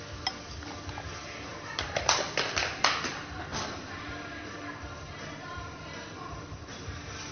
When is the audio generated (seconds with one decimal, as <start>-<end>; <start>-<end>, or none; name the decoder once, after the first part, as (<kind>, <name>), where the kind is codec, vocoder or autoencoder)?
1.5-2.2 (vocoder, BigVGAN v2); 3.5-7.3